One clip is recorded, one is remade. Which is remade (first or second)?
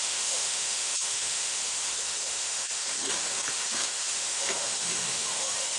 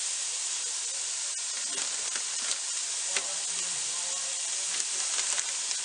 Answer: first